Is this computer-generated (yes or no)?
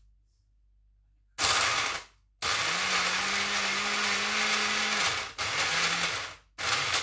no